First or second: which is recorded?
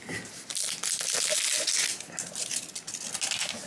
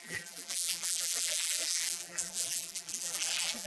first